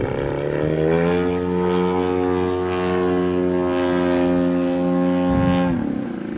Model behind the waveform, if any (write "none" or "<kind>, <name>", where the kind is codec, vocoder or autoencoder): none